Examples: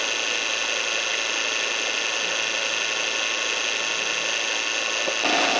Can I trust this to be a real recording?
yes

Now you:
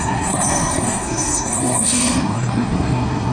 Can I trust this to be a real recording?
no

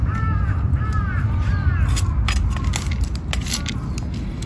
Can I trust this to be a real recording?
yes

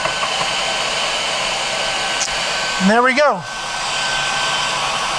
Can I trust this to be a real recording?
yes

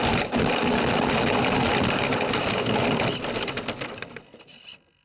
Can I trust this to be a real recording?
yes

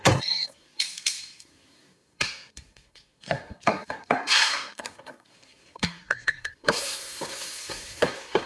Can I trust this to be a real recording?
no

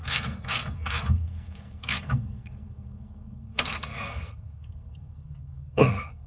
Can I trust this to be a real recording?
no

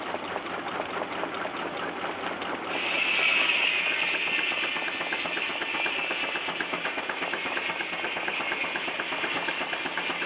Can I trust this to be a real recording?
yes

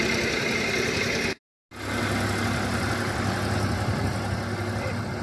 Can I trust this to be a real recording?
yes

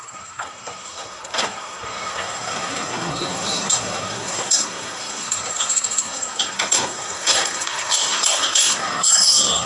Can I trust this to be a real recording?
no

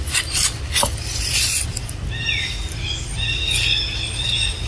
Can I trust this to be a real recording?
yes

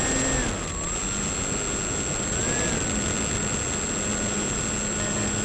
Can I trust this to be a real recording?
yes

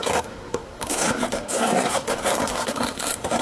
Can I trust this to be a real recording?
no